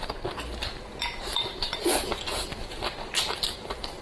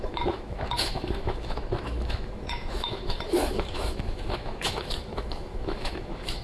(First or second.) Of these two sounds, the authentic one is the first